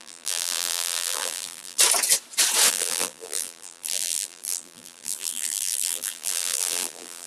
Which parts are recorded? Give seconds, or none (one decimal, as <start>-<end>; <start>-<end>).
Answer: 1.8-2.7